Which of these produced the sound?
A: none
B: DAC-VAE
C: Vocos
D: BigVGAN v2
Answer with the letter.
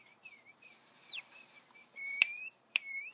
D